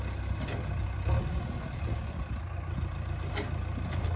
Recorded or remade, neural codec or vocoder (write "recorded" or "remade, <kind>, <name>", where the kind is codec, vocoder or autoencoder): recorded